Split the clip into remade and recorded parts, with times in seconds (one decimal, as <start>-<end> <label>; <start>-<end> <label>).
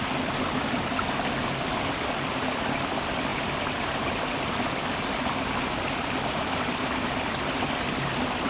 0.0-8.5 recorded